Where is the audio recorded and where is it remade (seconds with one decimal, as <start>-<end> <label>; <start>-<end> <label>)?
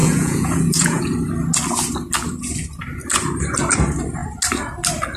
0.0-1.0 remade; 1.0-5.2 recorded